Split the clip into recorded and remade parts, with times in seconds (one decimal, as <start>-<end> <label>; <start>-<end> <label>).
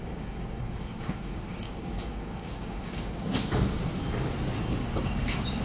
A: 0.0-3.9 remade; 3.9-4.7 recorded; 4.7-5.6 remade